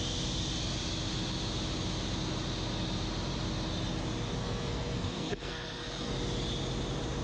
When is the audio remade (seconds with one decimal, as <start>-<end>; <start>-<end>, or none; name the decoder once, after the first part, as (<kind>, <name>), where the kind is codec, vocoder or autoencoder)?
4.4-6.1 (codec, SNAC)